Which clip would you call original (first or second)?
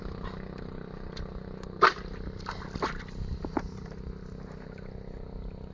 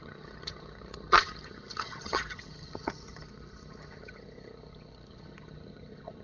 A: first